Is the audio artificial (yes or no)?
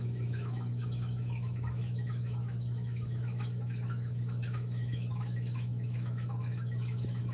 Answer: yes